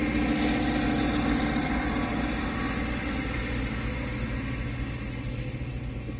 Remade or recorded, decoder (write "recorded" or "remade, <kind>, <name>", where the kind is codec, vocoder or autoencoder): recorded